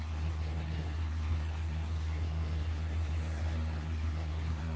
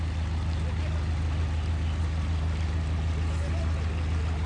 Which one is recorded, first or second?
second